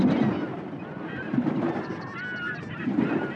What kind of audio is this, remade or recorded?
recorded